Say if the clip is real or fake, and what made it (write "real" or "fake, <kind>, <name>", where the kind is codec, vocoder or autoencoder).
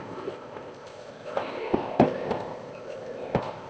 fake, codec, ZipCodec